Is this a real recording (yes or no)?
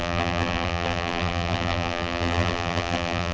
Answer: no